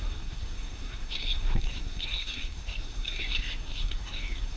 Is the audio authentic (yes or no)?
no